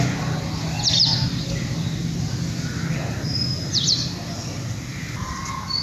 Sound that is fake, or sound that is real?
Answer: real